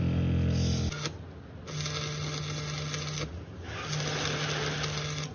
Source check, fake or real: real